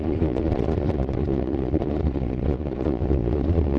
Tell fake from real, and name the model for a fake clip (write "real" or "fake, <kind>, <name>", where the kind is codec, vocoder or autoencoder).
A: fake, vocoder, Vocos